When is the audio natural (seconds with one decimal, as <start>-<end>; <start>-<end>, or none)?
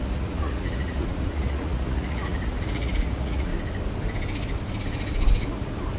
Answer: 3.5-6.0